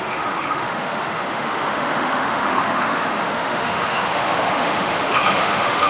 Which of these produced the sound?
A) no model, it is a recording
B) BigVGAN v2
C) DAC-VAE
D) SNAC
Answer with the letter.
C